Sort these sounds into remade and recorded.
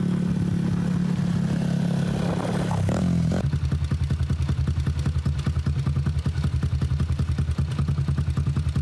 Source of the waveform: recorded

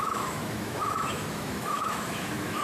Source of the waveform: remade